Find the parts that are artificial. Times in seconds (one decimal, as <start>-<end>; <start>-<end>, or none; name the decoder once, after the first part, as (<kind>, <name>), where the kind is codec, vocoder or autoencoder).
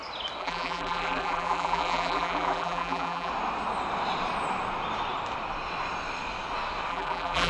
0.4-3.3 (vocoder, BigVGAN v2); 6.9-7.5